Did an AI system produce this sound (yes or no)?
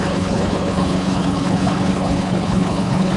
yes